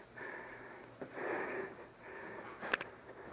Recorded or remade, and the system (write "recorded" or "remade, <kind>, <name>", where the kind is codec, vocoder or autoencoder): recorded